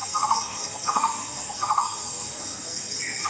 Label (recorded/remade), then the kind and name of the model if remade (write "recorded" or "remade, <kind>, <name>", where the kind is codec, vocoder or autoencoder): remade, codec, SNAC